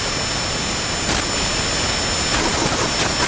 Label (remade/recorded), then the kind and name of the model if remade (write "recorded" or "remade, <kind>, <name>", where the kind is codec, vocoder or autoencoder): recorded